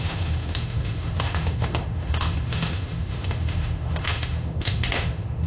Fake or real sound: fake